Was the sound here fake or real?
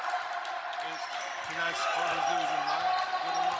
real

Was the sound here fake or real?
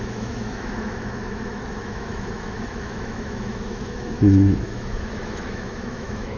fake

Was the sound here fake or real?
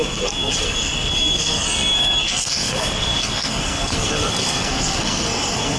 fake